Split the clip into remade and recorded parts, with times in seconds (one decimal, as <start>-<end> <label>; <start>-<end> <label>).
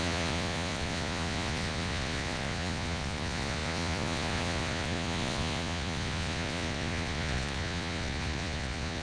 0.0-9.0 remade